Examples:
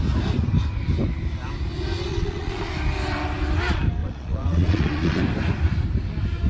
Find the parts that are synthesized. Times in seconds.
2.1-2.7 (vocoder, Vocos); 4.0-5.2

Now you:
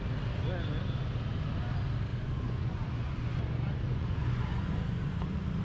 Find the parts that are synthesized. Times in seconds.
2.1-5.6 (vocoder, Vocos)

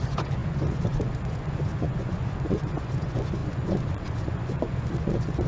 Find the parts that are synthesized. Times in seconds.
0.0-5.5 (vocoder, Vocos)

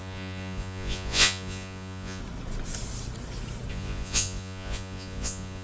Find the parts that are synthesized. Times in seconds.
0.0-2.2 (vocoder, Vocos); 3.7-5.6

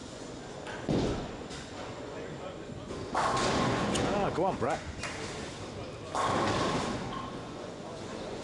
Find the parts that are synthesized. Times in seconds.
0.0-5.0 (vocoder, Vocos); 6.9-8.4